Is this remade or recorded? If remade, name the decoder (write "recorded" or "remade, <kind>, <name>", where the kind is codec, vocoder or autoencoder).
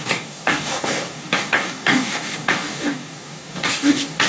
remade, codec, DAC